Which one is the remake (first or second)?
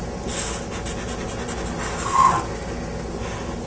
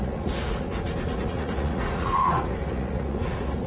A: second